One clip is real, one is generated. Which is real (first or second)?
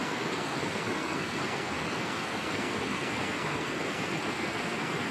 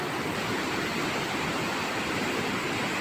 second